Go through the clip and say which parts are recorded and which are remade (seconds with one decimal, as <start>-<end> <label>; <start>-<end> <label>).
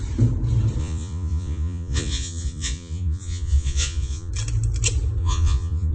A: 0.0-0.8 recorded; 0.8-4.3 remade; 4.3-5.2 recorded; 5.2-5.9 remade